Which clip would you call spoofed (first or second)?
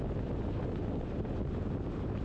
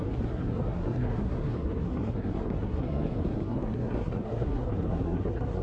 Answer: second